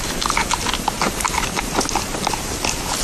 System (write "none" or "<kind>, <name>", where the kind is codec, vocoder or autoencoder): none